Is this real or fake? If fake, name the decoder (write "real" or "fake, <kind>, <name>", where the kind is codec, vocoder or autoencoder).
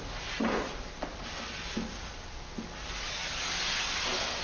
real